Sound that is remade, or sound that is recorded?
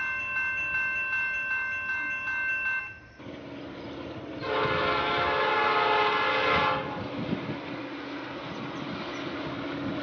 recorded